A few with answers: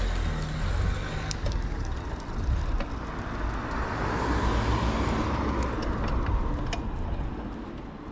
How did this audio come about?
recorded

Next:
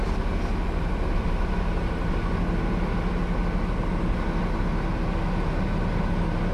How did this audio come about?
recorded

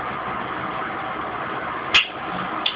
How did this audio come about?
recorded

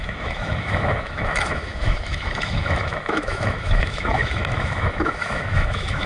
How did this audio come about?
remade